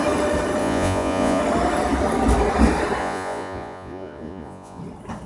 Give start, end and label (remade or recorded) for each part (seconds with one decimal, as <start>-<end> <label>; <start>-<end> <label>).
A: 0.0-0.6 recorded; 0.6-1.4 remade; 1.4-3.0 recorded; 3.0-4.8 remade; 4.8-5.3 recorded